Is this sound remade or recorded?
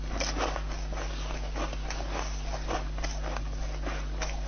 recorded